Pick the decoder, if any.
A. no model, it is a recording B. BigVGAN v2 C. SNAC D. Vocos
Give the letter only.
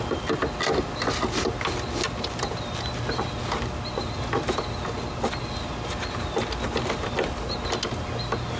A